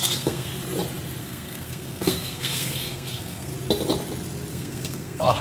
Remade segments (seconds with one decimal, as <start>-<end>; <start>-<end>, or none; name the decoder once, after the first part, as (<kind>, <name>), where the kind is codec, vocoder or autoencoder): 0.0-0.5 (codec, SNAC); 1.2-3.5; 4.5-5.4